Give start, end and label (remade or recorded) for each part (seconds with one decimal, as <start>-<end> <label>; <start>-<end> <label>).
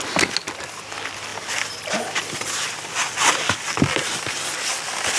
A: 0.0-5.2 recorded